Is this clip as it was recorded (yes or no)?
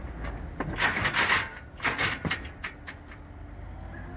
yes